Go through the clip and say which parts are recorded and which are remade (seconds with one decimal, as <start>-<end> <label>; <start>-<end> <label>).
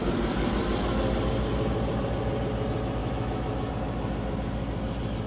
0.0-3.0 recorded; 3.0-3.7 remade; 3.7-5.3 recorded